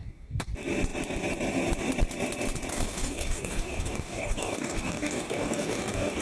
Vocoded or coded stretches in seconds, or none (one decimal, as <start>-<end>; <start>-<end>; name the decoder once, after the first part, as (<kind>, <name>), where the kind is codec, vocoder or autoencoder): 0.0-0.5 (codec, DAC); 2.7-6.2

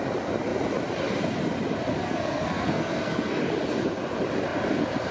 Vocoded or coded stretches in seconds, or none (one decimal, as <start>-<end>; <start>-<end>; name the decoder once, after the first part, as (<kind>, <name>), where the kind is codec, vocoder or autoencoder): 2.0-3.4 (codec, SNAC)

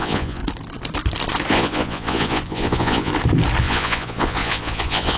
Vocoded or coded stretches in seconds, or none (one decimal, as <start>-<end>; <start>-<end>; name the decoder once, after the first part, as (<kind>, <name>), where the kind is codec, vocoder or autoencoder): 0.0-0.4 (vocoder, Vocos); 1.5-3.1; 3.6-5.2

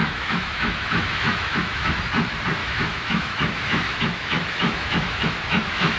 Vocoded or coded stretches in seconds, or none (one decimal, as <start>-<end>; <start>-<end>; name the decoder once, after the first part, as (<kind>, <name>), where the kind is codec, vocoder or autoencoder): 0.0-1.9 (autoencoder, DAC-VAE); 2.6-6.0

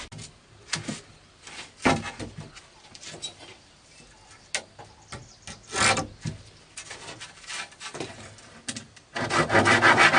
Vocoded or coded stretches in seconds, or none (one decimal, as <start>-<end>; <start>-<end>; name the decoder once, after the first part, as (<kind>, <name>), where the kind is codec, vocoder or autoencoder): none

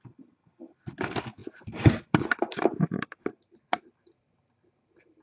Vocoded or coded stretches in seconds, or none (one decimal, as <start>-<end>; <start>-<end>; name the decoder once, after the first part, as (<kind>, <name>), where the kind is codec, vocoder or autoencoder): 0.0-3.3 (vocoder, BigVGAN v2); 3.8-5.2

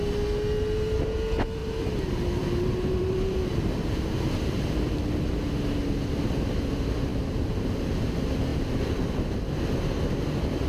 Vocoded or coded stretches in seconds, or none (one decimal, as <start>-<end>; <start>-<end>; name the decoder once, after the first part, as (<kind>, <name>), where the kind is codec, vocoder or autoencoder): 1.6-5.1 (vocoder, BigVGAN v2); 7.1-8.1

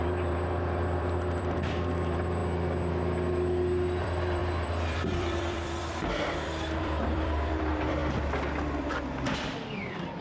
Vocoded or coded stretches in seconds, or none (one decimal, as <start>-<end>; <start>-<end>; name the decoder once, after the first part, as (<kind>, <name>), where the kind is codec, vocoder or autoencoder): 0.0-2.4 (vocoder, BigVGAN v2); 4.0-8.0; 8.6-10.2